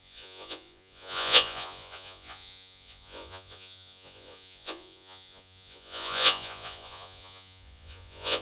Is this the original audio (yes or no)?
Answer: no